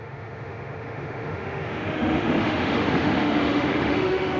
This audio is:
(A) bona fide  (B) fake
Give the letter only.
B